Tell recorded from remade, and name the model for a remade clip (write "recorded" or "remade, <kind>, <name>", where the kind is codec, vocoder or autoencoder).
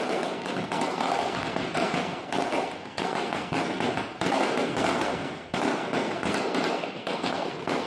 remade, codec, SNAC